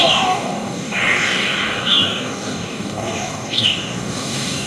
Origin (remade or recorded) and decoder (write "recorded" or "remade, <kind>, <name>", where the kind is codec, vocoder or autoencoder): remade, codec, DAC